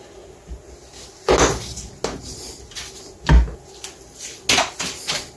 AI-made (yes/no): no